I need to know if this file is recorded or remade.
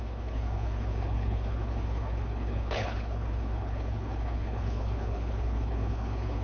remade